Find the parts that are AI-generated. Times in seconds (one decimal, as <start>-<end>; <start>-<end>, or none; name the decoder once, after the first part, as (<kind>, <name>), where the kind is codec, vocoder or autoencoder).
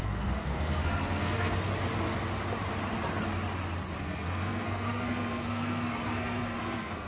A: 0.0-1.7 (codec, SNAC); 4.0-7.1